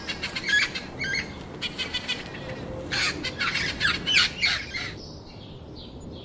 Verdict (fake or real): real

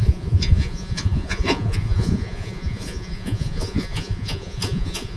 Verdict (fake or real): fake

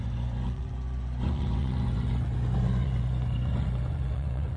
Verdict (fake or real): fake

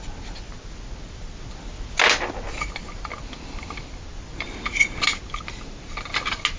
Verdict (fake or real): real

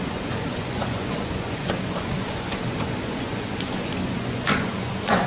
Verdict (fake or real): fake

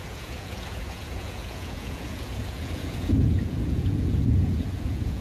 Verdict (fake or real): fake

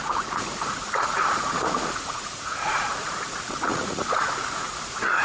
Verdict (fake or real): fake